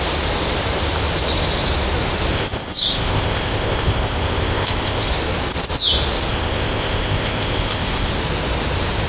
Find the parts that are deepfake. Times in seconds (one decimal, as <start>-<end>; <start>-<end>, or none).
2.3-5.1; 6.3-8.1